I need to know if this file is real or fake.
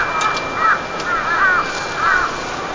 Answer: real